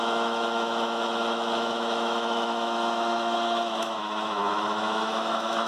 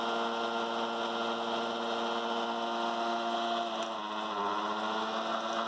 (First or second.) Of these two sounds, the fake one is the first